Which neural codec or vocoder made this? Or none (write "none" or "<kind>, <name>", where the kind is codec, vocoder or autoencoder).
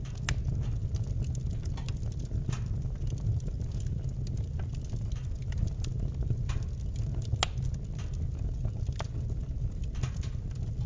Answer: none